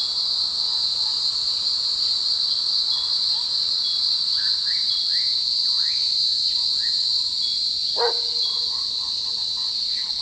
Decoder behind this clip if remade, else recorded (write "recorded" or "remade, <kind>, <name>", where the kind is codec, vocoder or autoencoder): recorded